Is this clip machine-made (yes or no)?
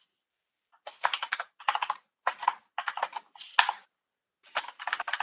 no